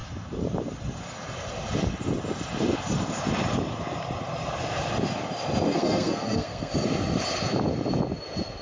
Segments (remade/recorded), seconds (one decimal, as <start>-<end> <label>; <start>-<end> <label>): 0.0-5.7 recorded; 5.7-6.7 remade; 6.7-8.6 recorded